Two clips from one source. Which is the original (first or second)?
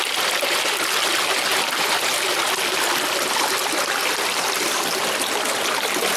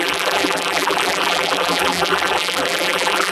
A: first